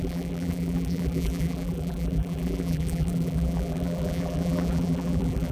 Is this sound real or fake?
fake